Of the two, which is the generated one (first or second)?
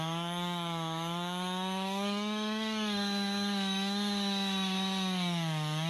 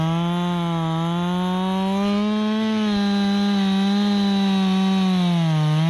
first